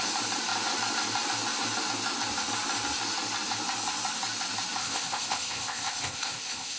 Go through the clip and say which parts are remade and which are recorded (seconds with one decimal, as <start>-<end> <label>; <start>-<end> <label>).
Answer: 0.0-4.8 recorded; 4.8-6.8 remade